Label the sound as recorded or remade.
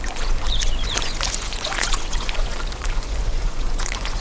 remade